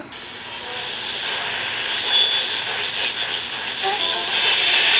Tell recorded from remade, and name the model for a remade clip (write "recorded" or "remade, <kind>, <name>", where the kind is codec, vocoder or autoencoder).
recorded